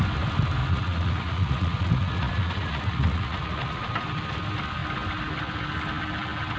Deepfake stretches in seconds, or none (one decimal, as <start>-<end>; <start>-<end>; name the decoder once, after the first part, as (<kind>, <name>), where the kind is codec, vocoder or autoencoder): 0.6-3.9 (vocoder, Vocos)